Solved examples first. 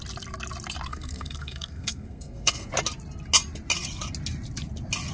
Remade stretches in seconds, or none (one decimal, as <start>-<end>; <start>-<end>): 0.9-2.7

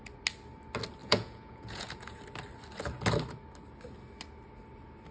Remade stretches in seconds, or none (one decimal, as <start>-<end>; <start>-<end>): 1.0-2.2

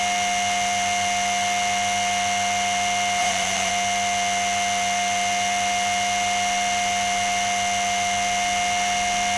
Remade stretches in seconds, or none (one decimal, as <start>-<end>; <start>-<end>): 3.2-3.7

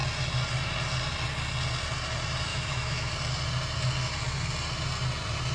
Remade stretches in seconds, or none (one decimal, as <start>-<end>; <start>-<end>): 2.5-3.1

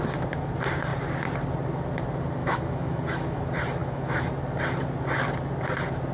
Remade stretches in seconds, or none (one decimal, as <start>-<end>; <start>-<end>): 2.4-3.4; 3.8-4.3

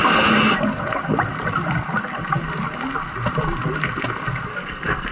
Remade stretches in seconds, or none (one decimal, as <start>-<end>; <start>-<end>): 4.5-5.1

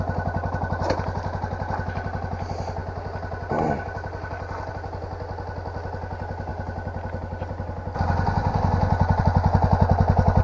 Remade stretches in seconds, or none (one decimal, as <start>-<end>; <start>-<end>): none